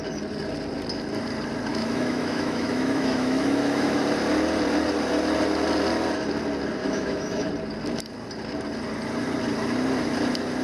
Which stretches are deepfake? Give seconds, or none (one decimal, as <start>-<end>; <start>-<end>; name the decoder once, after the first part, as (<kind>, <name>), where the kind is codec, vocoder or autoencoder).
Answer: 1.7-4.0 (autoencoder, DAC-VAE); 6.8-7.5